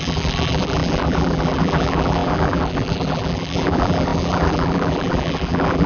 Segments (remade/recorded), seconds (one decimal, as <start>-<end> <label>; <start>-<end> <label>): 0.0-5.9 remade